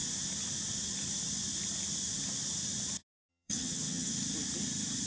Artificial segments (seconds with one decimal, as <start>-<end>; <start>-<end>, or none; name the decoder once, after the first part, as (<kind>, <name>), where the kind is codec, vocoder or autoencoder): 3.3-4.1 (vocoder, HiFi-GAN)